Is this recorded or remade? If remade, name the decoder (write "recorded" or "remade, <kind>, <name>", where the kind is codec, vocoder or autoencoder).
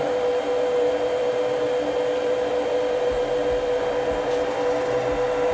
recorded